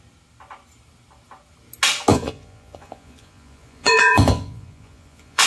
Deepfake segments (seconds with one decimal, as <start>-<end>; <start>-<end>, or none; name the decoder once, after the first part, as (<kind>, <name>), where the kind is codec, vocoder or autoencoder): 2.1-5.5 (vocoder, Vocos)